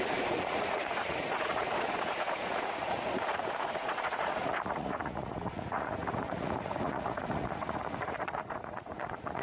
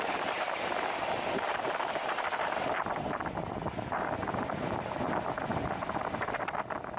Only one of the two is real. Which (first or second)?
second